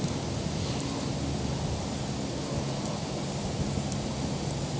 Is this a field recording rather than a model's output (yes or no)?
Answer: yes